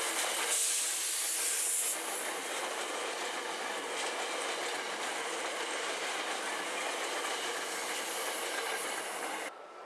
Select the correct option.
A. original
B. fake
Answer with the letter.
A